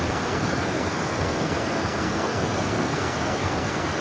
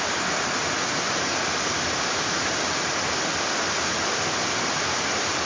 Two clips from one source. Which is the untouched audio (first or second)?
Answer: second